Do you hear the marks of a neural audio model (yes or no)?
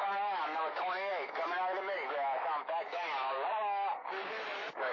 yes